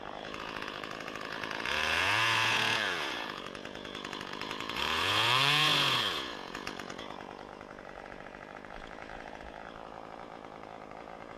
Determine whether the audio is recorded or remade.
remade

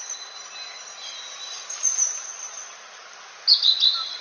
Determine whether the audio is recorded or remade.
recorded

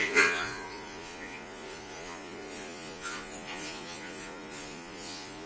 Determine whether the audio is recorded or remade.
remade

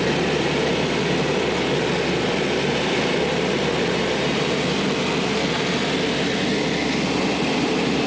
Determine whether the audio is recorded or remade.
recorded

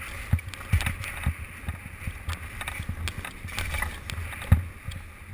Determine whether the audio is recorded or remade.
recorded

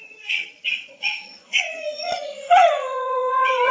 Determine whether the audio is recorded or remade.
remade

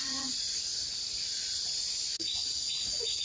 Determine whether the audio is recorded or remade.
remade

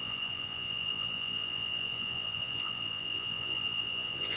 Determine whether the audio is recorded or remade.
remade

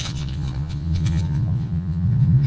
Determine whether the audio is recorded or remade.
remade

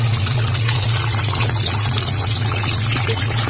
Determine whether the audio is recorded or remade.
remade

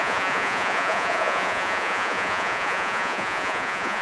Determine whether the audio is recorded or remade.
remade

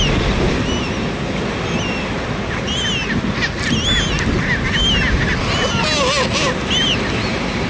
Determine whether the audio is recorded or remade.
recorded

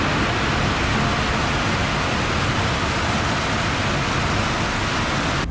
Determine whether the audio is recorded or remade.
recorded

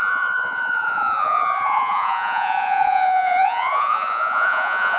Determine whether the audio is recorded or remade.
remade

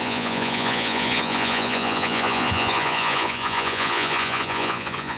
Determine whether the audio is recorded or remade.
remade